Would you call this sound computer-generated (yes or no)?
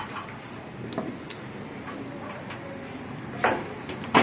no